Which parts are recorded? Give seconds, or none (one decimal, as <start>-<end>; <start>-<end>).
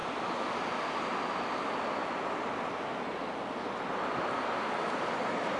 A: 0.0-5.6